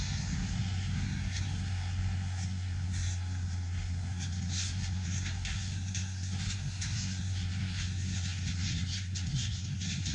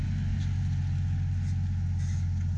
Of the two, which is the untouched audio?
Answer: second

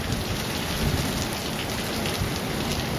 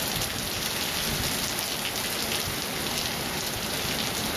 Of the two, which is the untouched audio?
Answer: second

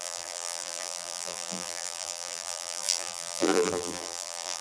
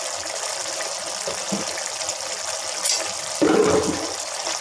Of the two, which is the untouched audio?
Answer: second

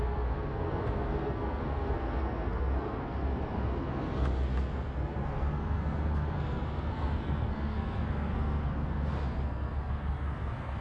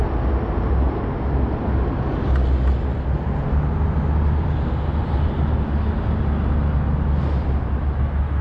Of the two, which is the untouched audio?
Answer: second